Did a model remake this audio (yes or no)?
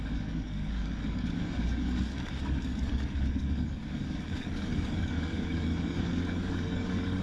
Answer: yes